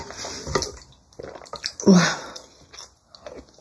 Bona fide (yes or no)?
yes